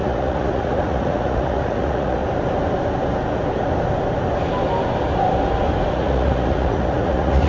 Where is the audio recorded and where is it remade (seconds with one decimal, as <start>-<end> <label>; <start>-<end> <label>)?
0.0-2.2 remade; 2.2-5.9 recorded; 5.9-7.5 remade